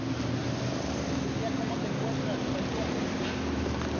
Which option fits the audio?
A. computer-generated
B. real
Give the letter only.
B